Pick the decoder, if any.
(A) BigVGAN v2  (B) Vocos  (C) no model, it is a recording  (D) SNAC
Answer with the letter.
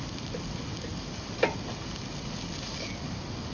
C